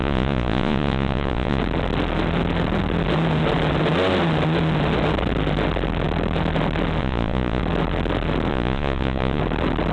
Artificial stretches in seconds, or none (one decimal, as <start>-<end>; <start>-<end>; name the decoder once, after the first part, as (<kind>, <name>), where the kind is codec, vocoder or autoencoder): 0.0-1.6 (vocoder, Vocos); 7.0-7.6; 8.5-9.4